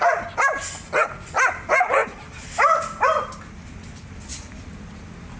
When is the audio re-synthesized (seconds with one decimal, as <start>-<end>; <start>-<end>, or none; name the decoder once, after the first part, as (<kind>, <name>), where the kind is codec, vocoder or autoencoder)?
none

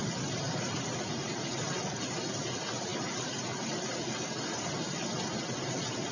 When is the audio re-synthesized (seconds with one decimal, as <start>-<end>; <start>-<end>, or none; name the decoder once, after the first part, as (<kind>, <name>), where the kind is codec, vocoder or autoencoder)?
none

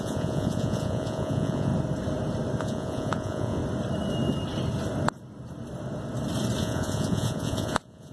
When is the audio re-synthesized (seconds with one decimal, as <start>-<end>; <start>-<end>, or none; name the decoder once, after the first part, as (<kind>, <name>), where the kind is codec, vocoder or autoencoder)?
0.0-1.7 (vocoder, Vocos); 2.6-3.6; 6.6-8.1

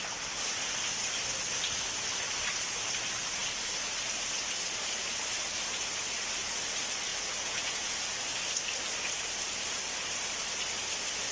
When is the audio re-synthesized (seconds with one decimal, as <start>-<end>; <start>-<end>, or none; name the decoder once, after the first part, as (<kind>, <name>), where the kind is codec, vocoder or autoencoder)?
7.1-8.2 (vocoder, Vocos)

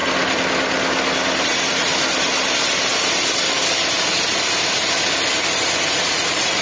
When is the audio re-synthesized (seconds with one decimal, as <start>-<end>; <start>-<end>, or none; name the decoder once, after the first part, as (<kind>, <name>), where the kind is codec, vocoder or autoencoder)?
1.4-1.9 (vocoder, Vocos); 5.9-6.6

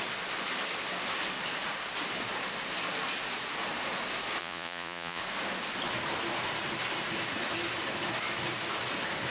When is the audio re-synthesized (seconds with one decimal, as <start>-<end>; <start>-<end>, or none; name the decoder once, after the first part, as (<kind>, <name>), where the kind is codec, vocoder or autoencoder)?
4.4-5.2 (vocoder, Vocos)